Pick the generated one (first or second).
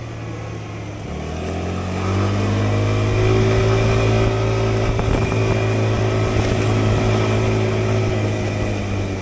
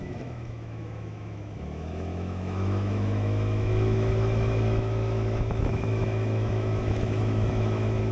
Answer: second